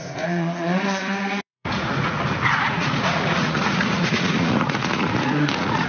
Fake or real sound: fake